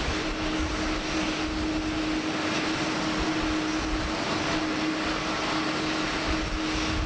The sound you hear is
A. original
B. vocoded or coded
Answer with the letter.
A